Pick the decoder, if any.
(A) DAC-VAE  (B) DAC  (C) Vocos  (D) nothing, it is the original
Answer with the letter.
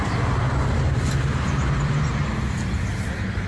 D